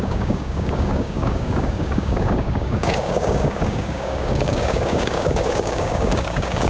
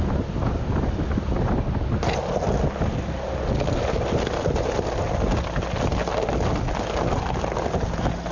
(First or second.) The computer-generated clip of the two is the first